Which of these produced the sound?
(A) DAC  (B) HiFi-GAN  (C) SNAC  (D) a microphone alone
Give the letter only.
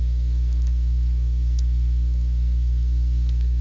C